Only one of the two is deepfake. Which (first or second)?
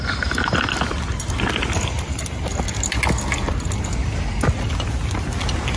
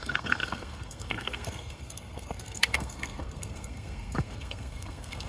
second